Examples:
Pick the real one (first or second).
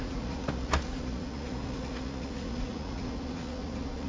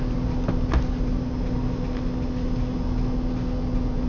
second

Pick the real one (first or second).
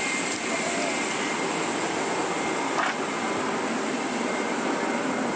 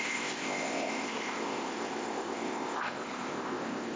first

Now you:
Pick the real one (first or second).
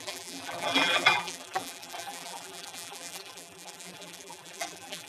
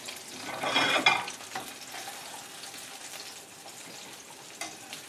second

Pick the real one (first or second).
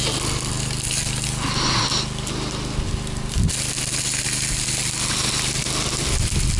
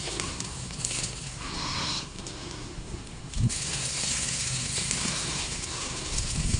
first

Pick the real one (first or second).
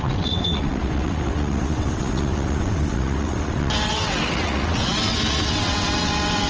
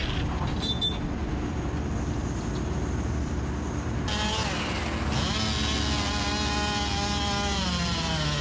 second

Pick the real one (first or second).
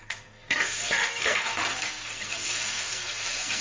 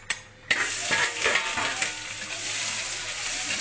second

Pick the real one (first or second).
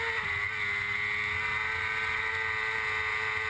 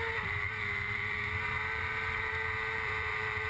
first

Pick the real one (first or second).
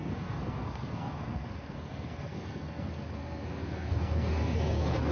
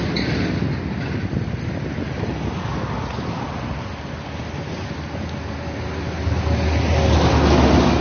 second